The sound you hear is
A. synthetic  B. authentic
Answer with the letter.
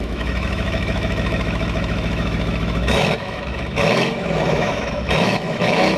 A